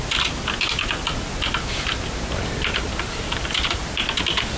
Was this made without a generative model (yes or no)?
yes